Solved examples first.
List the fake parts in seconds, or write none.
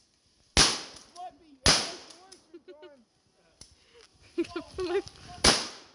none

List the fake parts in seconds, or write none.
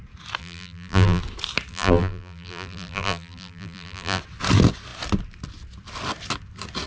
0.4-1.2 (vocoder, BigVGAN v2); 1.7-4.2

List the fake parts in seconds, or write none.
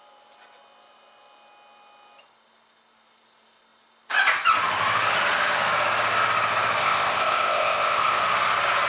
6.8-8.2 (codec, ZipCodec)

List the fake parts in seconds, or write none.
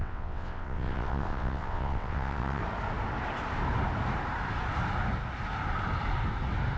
0.0-2.6 (vocoder, WaveNeXt)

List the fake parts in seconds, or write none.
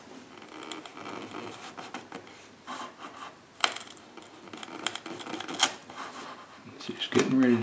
none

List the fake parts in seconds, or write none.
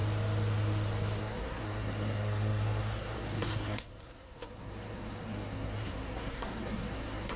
1.2-7.4 (codec, SNAC)